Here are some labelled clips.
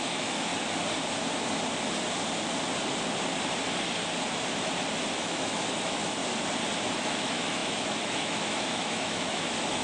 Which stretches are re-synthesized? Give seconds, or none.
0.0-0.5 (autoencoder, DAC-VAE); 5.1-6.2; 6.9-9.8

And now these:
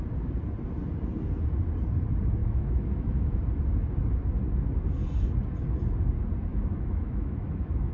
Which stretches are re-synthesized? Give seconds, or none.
2.4-3.4 (autoencoder, DAC-VAE); 6.5-7.9